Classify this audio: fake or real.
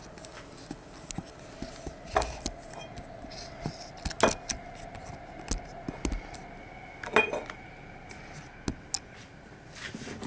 real